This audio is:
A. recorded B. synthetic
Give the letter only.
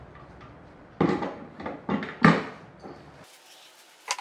A